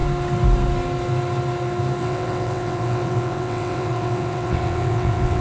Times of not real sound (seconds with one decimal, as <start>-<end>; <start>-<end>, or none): 2.0-5.4